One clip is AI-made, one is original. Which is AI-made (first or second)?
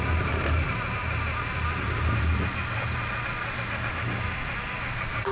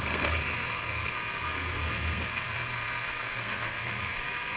second